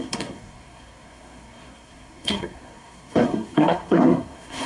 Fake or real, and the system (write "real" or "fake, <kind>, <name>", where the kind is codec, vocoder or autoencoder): fake, codec, SNAC